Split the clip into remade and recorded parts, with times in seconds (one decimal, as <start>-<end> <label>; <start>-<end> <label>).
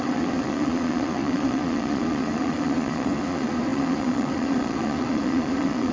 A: 0.0-5.9 remade